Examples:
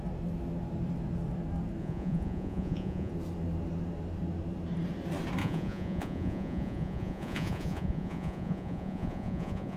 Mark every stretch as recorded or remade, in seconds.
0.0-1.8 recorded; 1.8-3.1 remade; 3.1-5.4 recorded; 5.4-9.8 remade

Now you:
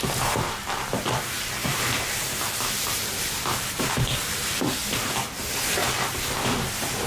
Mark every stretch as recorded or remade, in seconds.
0.0-4.8 remade; 4.8-7.1 recorded

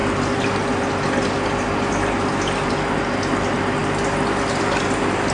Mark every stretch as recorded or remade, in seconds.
0.0-5.3 recorded

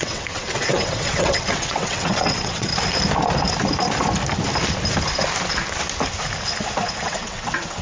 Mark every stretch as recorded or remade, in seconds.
0.0-2.7 remade; 2.7-7.0 recorded; 7.0-7.8 remade

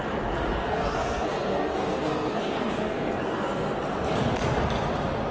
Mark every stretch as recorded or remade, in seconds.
0.0-0.6 recorded; 0.6-3.8 remade; 3.8-5.3 recorded